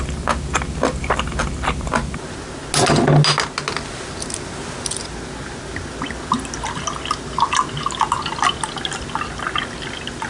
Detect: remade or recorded recorded